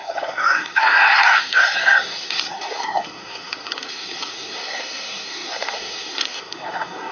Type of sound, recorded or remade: remade